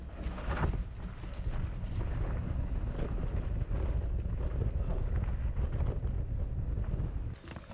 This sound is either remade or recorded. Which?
recorded